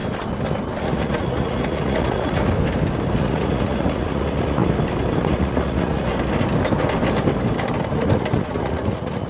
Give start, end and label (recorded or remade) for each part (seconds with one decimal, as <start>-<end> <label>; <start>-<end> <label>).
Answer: 0.0-0.8 recorded; 0.8-2.4 remade; 2.4-3.2 recorded; 3.2-4.6 remade; 4.6-5.2 recorded; 5.2-6.1 remade; 6.1-7.9 recorded; 7.9-9.3 remade